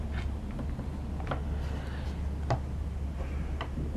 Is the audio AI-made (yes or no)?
no